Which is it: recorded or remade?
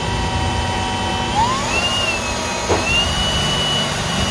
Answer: recorded